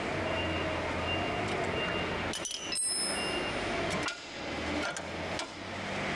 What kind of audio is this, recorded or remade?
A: recorded